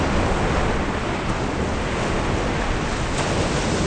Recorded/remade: recorded